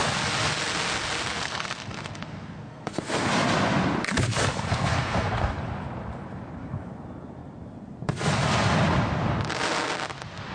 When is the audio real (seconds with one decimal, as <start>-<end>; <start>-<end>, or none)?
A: 0.0-1.2; 3.3-4.7; 5.5-10.5